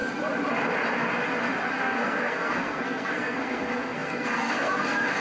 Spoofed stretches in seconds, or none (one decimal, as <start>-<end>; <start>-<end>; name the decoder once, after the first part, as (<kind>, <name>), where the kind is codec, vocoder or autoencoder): 1.7-5.2 (codec, SNAC)